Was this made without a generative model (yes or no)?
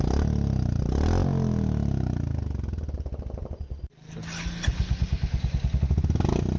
yes